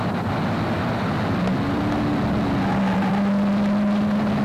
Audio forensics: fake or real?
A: real